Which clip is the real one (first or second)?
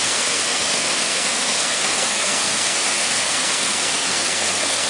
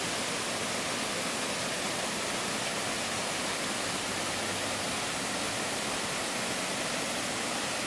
second